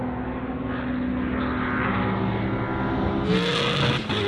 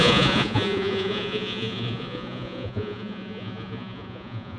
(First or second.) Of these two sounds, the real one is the first